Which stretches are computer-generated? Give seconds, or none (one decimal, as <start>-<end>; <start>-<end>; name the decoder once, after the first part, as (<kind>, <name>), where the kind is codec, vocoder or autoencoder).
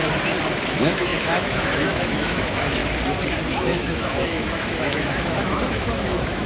0.6-2.8 (autoencoder, DAC-VAE); 3.5-6.5